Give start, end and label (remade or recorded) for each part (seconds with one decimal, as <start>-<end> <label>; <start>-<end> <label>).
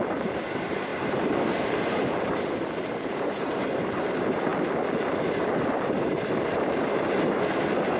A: 0.0-4.5 remade; 4.5-5.6 recorded; 5.6-8.0 remade